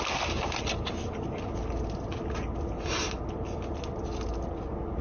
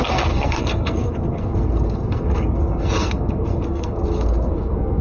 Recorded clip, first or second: first